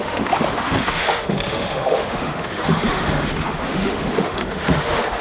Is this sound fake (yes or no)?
yes